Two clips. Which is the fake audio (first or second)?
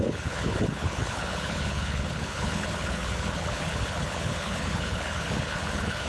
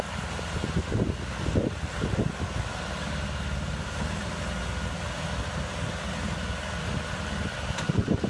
first